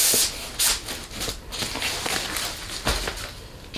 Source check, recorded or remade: recorded